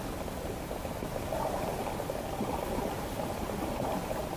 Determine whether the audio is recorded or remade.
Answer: recorded